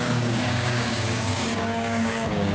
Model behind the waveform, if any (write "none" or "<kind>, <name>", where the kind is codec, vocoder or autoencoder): codec, DAC